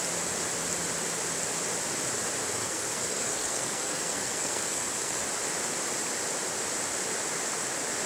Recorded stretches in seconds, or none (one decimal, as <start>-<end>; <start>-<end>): 0.0-2.6; 5.2-8.1